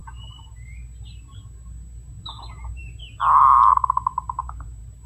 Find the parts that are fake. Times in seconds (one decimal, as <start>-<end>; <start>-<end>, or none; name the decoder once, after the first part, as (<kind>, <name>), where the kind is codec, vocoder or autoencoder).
4.4-5.1 (vocoder, BigVGAN v2)